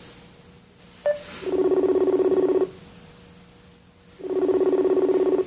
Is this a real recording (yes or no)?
yes